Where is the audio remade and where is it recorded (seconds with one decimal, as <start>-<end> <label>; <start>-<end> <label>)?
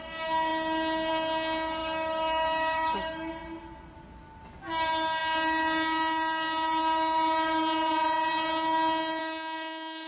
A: 0.0-1.8 recorded; 1.8-3.3 remade; 3.3-9.2 recorded; 9.2-10.1 remade